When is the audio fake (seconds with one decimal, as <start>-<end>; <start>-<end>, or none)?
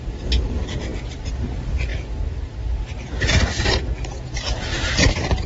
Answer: none